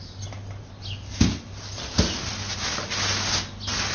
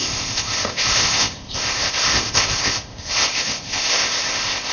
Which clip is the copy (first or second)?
second